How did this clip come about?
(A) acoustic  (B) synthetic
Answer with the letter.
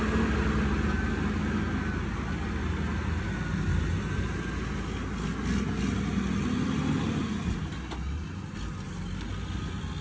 A